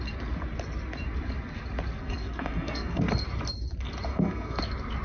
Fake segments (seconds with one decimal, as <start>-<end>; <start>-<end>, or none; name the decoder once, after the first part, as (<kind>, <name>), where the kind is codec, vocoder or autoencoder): 2.0-3.0 (codec, SNAC); 4.1-4.6